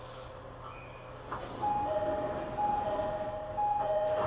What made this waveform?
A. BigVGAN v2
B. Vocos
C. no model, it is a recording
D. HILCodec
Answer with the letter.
C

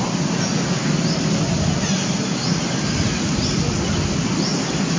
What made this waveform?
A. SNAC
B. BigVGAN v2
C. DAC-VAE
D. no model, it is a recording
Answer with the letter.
D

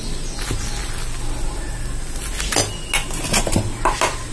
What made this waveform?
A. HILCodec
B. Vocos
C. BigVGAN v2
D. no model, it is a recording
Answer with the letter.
D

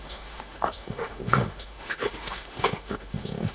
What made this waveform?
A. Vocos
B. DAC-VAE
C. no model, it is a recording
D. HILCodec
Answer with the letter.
B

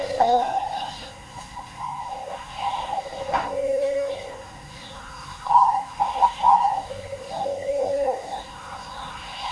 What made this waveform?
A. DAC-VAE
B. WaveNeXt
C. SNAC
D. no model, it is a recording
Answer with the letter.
C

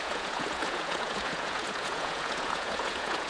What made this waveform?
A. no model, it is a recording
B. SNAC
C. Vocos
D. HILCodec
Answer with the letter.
C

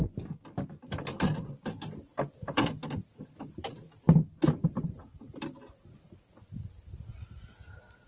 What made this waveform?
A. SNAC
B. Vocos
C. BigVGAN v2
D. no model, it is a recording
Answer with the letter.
D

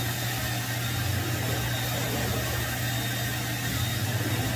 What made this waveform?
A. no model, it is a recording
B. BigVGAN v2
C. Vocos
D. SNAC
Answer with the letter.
A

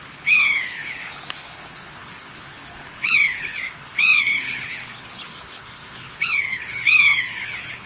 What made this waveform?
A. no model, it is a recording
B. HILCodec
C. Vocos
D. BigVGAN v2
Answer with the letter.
B